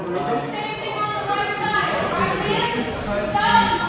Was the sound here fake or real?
real